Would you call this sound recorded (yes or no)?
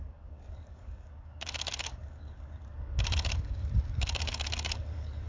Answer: no